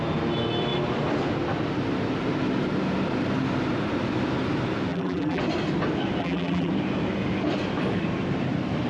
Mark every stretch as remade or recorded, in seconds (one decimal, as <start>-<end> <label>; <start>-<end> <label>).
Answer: 0.0-4.9 recorded; 4.9-5.4 remade; 5.4-6.2 recorded; 6.2-6.7 remade; 6.7-8.9 recorded